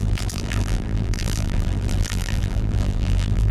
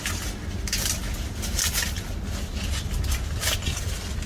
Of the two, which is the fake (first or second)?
first